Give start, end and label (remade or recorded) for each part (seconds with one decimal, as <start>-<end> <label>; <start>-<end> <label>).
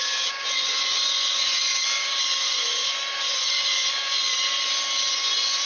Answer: 0.0-1.7 remade; 1.7-2.4 recorded; 2.4-4.2 remade; 4.2-5.1 recorded; 5.1-5.7 remade